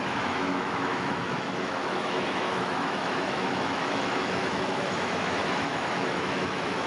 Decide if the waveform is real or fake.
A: fake